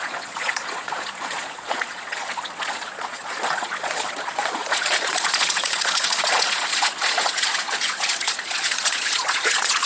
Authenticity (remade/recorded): remade